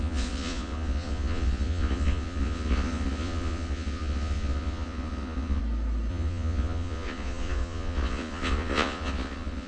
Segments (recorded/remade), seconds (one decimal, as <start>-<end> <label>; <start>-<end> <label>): 0.0-5.6 remade; 5.6-6.1 recorded; 6.1-9.7 remade